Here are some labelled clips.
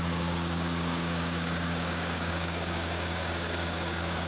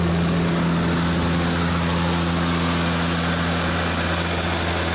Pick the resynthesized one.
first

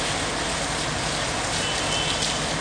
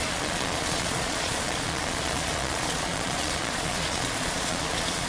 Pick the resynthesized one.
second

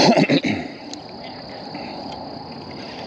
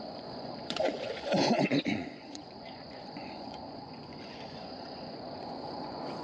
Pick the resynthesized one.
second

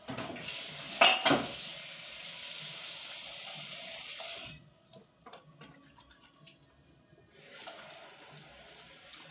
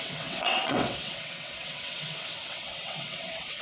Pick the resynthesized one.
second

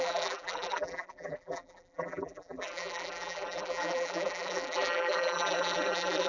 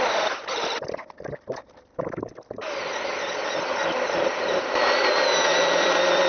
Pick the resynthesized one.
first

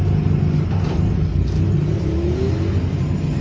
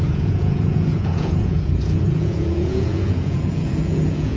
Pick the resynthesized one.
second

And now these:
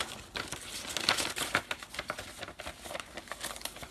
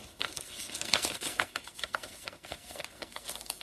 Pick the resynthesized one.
second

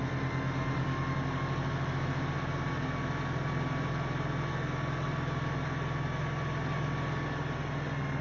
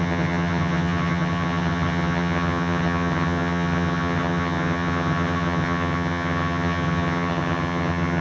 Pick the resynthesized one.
second